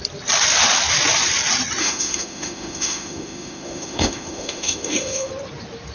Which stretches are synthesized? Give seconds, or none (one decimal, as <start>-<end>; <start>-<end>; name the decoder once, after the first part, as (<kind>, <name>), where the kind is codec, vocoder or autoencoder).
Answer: 1.8-5.3 (autoencoder, DAC-VAE)